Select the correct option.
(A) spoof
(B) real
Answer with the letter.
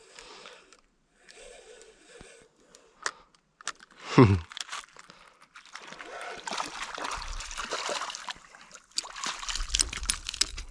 B